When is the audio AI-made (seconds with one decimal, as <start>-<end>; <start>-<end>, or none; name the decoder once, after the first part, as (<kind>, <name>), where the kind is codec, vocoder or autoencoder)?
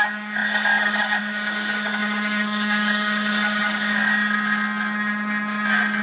0.0-4.1 (codec, DAC)